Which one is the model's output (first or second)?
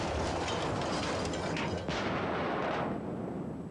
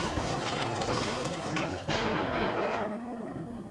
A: second